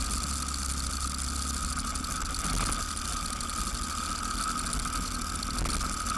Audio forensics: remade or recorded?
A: recorded